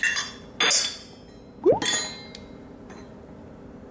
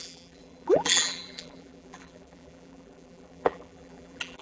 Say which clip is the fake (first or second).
second